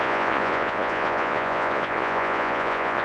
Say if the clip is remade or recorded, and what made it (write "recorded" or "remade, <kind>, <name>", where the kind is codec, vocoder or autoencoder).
remade, vocoder, Vocos